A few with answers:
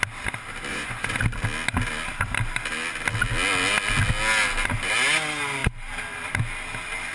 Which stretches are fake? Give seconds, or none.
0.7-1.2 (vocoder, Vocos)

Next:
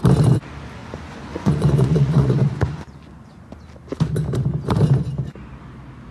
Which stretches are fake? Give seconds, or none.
0.8-3.5 (vocoder, Vocos)